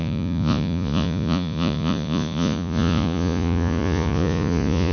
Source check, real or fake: fake